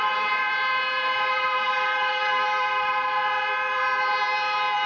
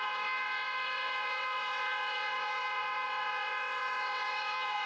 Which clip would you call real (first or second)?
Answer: first